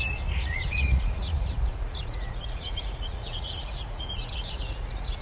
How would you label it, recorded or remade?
remade